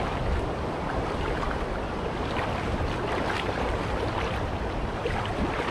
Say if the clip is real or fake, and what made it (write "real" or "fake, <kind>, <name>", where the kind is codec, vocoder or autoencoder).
real